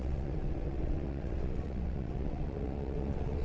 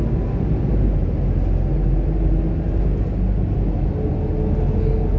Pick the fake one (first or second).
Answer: first